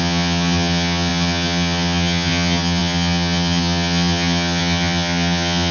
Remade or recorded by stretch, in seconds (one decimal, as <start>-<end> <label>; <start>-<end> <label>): 0.0-5.7 remade